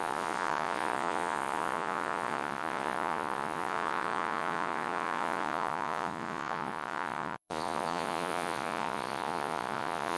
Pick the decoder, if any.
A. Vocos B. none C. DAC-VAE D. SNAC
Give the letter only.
A